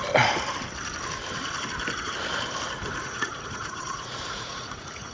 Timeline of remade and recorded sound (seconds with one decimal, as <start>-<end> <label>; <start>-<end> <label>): 0.0-3.0 recorded; 3.0-5.1 remade